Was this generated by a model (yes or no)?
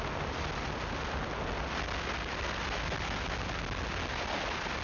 no